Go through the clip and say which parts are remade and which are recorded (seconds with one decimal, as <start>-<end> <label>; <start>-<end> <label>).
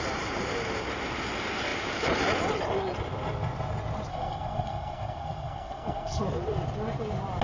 0.0-4.1 recorded; 4.1-6.2 remade; 6.2-7.4 recorded